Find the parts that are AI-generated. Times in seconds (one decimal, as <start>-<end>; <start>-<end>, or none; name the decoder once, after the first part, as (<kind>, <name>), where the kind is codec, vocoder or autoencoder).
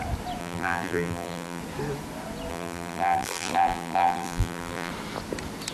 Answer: 0.4-1.6 (vocoder, BigVGAN v2); 2.5-4.9